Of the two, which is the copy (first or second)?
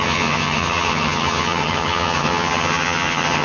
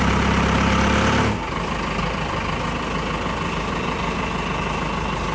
first